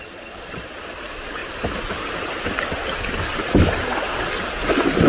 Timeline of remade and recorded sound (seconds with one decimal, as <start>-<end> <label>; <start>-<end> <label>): 0.0-5.1 recorded